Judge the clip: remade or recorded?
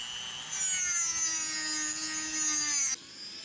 recorded